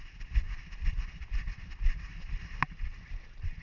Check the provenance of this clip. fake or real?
real